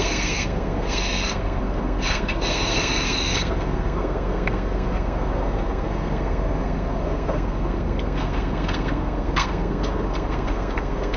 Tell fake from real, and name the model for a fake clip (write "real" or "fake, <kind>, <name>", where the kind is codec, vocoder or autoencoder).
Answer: fake, codec, SNAC